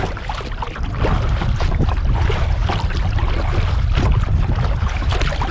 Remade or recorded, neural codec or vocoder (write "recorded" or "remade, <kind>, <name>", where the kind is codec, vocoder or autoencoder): recorded